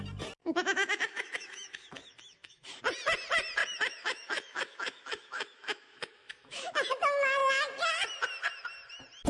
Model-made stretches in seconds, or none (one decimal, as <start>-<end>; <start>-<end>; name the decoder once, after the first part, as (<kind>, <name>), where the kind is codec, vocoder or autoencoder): 0.4-2.8 (autoencoder, DAC-VAE); 3.6-7.0